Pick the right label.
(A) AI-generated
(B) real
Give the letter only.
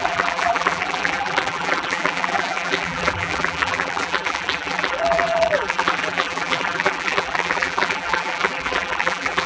A